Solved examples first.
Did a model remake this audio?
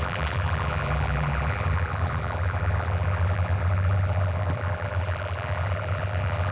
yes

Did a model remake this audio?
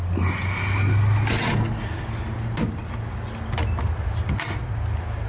no